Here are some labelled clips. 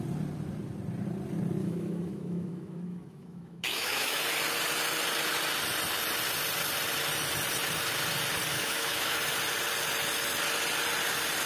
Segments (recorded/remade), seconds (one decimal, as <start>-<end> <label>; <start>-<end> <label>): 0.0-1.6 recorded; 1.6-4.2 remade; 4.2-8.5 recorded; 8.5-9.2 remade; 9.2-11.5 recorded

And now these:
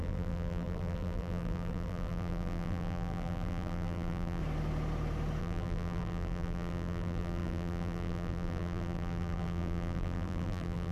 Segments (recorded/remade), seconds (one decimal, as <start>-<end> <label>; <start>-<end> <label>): 0.0-4.4 remade; 4.4-5.4 recorded; 5.4-10.9 remade

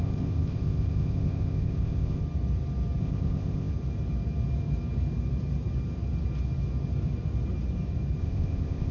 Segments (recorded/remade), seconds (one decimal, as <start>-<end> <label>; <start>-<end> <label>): 0.0-2.2 remade; 2.2-3.0 recorded; 3.0-3.7 remade; 3.7-8.2 recorded; 8.2-8.9 remade

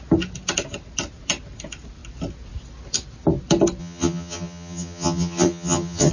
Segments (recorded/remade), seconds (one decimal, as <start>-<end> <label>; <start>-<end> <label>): 0.0-3.8 recorded; 3.8-6.1 remade